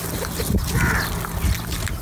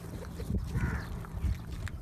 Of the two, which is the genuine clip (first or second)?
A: first